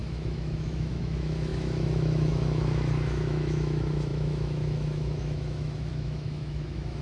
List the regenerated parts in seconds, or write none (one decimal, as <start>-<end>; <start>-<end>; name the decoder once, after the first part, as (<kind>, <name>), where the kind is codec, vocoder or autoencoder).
0.0-7.0 (autoencoder, DAC-VAE)